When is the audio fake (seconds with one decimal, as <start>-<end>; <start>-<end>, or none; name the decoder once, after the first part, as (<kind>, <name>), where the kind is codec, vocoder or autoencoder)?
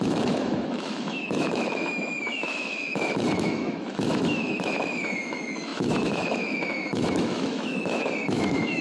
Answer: 0.0-8.8 (autoencoder, DAC-VAE)